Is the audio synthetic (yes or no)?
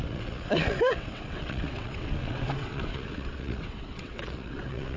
yes